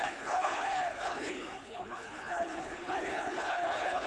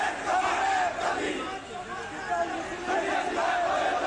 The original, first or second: second